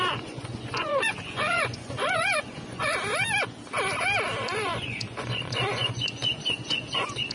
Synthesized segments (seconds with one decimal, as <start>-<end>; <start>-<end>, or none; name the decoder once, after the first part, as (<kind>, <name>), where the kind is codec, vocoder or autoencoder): 0.0-2.9 (vocoder, Vocos); 4.8-7.3